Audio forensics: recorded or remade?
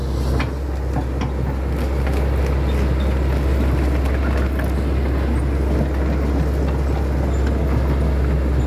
recorded